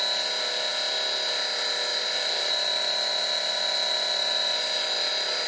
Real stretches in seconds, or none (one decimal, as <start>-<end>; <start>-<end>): 0.0-1.9; 5.1-5.5